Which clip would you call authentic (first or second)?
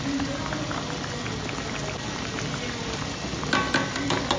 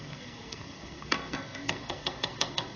first